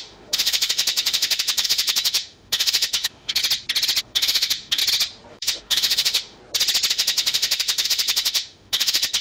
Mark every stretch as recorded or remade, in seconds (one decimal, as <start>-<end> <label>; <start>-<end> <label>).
0.0-3.4 remade; 3.4-4.0 recorded; 4.0-4.8 remade; 4.8-5.3 recorded; 5.3-6.4 remade; 6.4-6.9 recorded; 6.9-9.2 remade